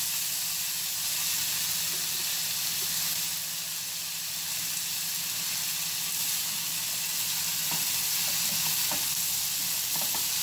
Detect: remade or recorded recorded